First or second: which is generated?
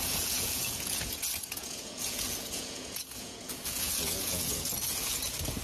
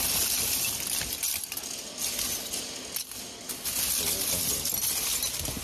first